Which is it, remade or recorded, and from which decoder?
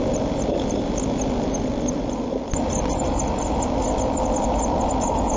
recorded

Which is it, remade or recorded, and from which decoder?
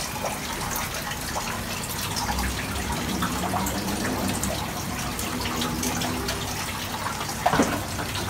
recorded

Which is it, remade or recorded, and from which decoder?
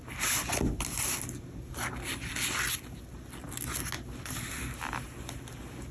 recorded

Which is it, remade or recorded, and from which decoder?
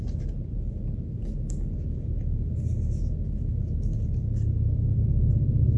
recorded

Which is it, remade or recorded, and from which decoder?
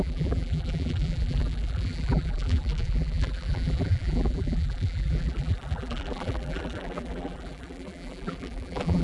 remade, vocoder, BigVGAN v2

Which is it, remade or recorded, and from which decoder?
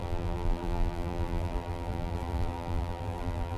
remade, vocoder, BigVGAN v2